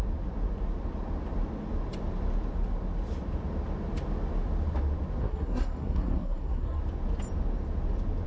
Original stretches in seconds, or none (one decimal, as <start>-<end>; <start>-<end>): 0.0-5.2; 6.8-8.3